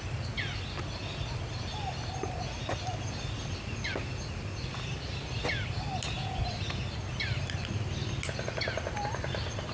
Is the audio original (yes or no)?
yes